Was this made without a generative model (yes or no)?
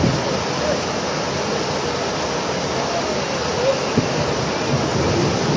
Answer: yes